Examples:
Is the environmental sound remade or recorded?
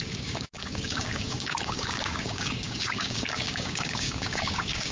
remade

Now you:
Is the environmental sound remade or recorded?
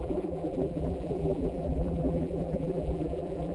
remade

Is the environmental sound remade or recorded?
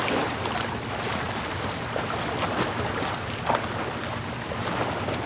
recorded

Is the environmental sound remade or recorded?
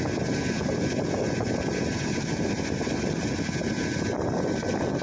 recorded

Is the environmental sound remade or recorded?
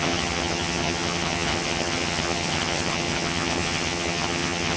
remade